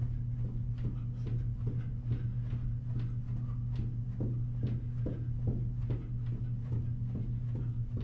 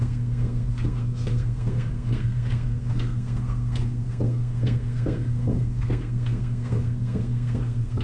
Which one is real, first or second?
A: first